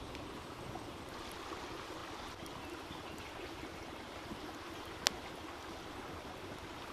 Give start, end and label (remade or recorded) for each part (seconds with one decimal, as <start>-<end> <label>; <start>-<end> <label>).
0.0-6.9 recorded